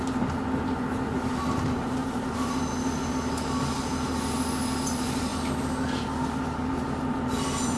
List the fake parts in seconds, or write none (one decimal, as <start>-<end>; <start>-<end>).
none